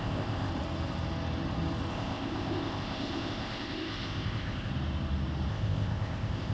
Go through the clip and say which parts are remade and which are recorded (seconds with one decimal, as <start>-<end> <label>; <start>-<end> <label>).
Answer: 0.0-0.5 remade; 0.5-1.9 recorded; 1.9-4.7 remade; 4.7-5.5 recorded; 5.5-6.5 remade